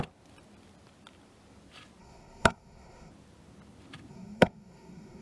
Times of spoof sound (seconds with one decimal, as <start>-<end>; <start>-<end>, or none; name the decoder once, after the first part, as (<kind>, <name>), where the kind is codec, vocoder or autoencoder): 2.0-3.1 (codec, SNAC); 4.1-5.2